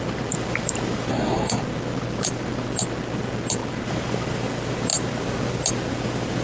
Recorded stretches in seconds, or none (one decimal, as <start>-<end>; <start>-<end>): 0.0-1.1; 1.6-6.4